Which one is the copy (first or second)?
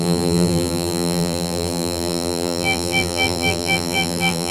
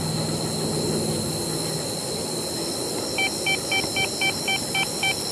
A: first